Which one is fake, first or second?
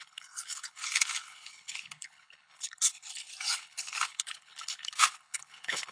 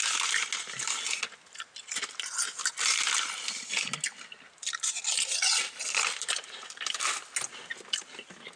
first